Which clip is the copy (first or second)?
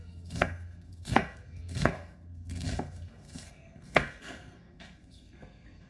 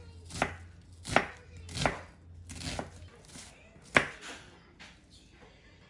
first